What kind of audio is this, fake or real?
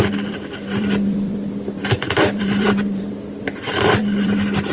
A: fake